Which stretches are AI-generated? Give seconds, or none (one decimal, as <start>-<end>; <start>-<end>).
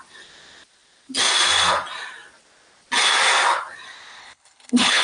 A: 4.2-5.0